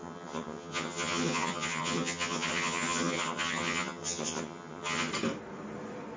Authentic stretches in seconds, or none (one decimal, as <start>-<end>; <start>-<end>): 5.1-6.2